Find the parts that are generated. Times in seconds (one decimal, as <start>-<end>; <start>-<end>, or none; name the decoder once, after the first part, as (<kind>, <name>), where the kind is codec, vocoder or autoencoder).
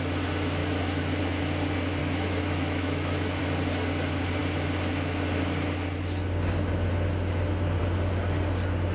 0.6-1.2 (autoencoder, DAC-VAE); 2.0-3.4